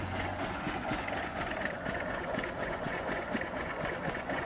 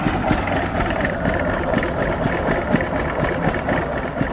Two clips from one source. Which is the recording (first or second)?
second